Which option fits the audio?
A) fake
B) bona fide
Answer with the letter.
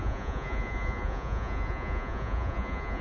A